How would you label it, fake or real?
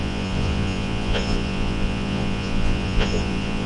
fake